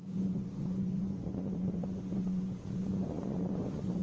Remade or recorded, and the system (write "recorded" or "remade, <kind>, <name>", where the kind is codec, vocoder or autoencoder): remade, vocoder, Vocos